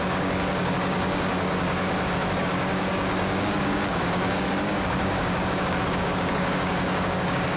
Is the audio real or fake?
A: fake